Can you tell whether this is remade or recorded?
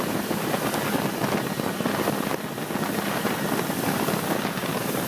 recorded